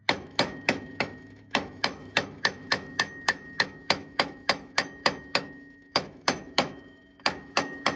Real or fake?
fake